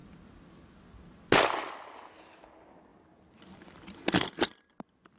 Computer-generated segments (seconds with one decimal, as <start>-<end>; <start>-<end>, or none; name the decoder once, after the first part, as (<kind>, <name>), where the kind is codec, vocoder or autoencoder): none